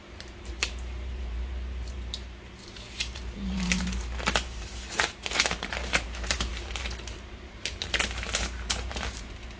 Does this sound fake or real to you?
fake